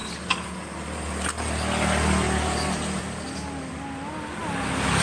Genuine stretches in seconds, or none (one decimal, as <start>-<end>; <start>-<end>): 0.0-5.0